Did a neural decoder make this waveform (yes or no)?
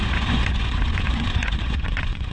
yes